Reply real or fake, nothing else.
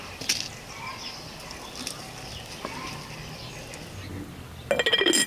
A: real